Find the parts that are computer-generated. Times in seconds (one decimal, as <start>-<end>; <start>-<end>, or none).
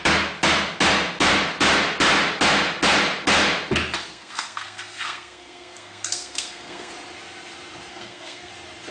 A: 4.1-6.9; 7.9-8.5